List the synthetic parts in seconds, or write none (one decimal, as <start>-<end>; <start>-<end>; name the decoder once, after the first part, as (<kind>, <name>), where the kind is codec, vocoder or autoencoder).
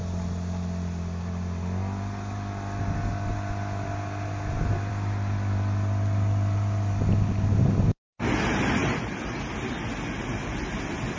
none